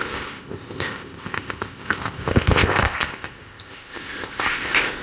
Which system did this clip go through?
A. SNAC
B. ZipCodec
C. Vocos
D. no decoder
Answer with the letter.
B